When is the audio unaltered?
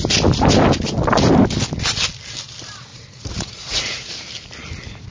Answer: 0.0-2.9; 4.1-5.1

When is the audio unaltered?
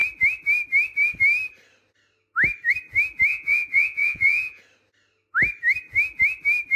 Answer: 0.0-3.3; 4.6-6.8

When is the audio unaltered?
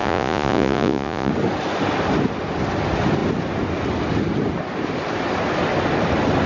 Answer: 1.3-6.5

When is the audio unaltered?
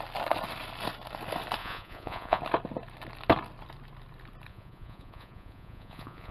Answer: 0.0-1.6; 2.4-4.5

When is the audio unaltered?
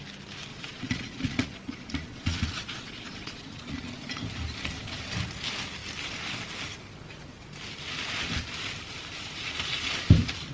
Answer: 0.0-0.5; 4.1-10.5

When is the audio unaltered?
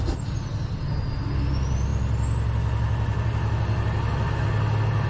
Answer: 0.0-5.1